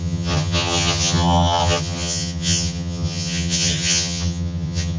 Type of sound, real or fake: fake